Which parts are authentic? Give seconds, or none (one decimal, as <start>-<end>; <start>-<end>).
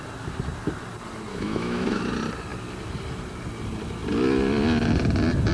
0.0-1.3; 2.0-5.5